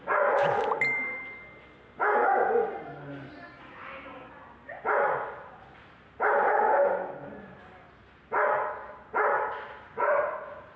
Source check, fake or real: real